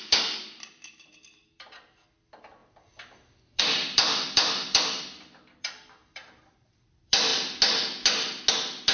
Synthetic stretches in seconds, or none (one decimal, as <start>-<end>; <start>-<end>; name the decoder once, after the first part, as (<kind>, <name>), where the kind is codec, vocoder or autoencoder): 0.0-7.3 (vocoder, BigVGAN v2); 8.5-8.9

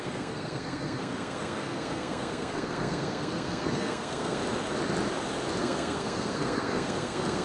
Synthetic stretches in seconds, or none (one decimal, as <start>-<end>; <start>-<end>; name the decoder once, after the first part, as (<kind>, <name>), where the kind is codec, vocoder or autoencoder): 0.0-4.4 (codec, SNAC); 5.6-7.4

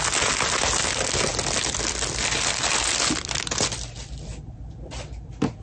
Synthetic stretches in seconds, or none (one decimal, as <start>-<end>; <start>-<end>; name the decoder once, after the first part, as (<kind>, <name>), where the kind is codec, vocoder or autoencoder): none

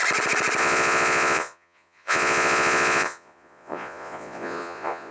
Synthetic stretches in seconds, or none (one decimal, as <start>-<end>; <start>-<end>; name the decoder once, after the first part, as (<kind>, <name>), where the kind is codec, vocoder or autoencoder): 0.6-5.1 (vocoder, Vocos)

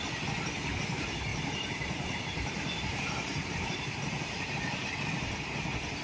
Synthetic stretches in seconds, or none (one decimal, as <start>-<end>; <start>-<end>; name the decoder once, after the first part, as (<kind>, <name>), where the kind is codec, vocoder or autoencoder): 1.3-4.9 (vocoder, BigVGAN v2)

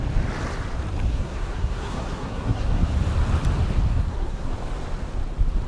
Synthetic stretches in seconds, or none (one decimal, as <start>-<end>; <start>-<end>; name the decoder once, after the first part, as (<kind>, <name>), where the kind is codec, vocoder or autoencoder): 1.1-2.9 (codec, SNAC); 3.9-4.5

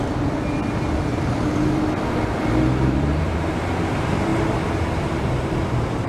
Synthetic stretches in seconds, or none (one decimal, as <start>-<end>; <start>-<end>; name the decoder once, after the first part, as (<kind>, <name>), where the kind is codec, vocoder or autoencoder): 1.1-3.3 (vocoder, BigVGAN v2); 4.3-6.1